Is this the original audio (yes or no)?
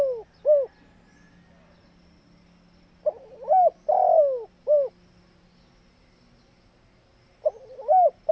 yes